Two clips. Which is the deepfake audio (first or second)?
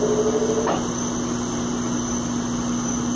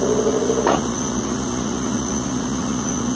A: second